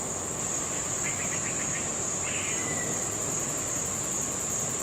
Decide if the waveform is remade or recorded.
recorded